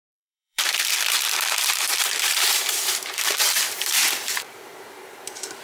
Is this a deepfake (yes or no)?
yes